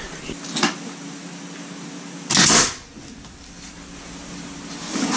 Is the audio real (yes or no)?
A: yes